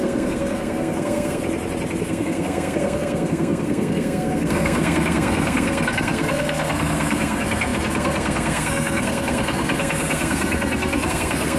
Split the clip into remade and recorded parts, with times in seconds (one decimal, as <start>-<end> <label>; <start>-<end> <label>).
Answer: 0.0-1.4 remade; 1.4-2.0 recorded; 2.0-11.6 remade